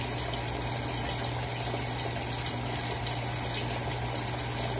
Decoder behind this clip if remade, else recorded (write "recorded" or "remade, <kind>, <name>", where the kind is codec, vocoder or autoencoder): recorded